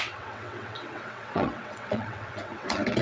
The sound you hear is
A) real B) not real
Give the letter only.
B